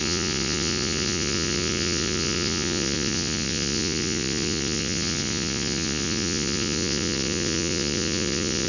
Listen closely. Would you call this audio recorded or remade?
remade